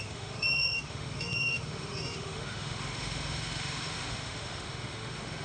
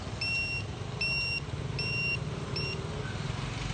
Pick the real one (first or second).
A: second